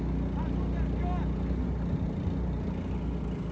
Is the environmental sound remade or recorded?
recorded